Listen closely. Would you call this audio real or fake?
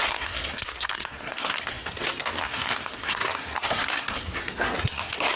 fake